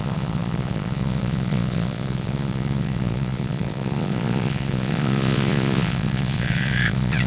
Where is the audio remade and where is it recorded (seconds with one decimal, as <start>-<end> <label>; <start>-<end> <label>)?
0.0-7.3 remade